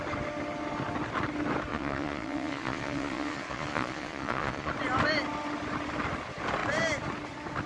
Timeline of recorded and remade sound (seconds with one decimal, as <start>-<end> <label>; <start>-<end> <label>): 0.0-1.7 recorded; 1.7-4.7 remade; 4.7-7.7 recorded